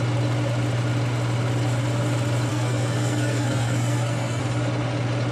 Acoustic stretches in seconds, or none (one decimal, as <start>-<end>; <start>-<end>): 0.0-2.5; 4.4-5.3